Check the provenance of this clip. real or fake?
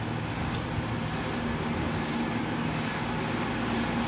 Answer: real